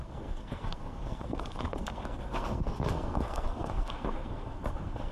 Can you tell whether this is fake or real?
fake